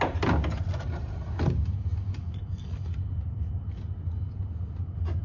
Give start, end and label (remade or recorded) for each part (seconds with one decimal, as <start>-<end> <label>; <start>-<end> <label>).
0.0-5.2 recorded